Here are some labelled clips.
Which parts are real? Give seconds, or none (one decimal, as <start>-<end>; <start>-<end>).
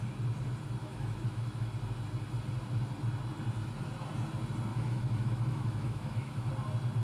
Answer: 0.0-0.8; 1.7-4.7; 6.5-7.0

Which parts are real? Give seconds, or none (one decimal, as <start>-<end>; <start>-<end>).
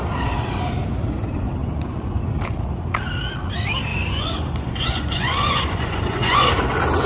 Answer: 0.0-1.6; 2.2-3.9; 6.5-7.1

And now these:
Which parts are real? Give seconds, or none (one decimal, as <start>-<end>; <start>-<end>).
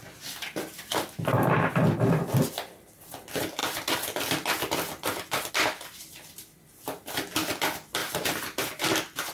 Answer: 0.0-8.0; 8.7-9.3